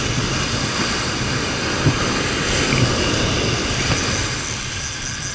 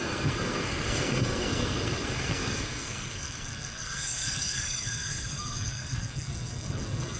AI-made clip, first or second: second